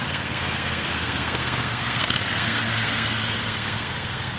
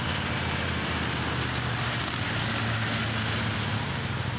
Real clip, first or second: second